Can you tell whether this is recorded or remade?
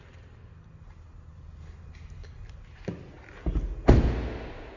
recorded